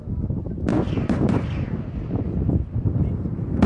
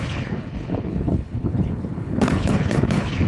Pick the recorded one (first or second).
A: first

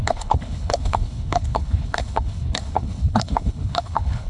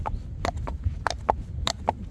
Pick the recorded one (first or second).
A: second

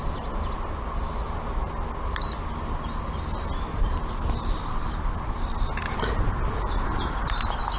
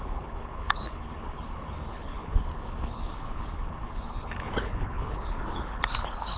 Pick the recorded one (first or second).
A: first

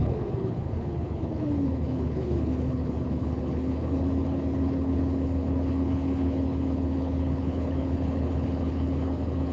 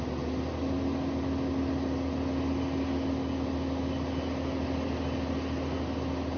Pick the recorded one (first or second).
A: second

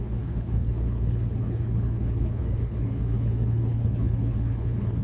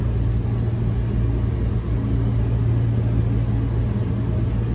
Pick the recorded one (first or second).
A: second